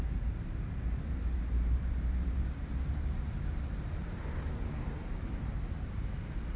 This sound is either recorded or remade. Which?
remade